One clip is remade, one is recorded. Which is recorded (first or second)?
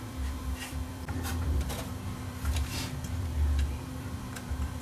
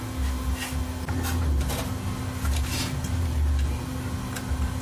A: second